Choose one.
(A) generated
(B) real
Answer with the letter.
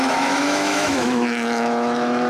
A